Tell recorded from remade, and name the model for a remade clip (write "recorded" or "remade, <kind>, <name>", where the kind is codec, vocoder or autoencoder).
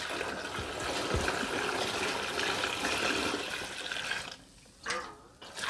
recorded